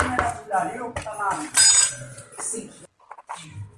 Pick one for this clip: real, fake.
real